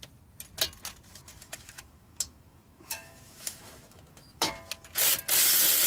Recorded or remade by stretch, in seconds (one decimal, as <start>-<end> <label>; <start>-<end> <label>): 0.0-1.4 recorded; 1.4-4.5 remade; 4.5-5.9 recorded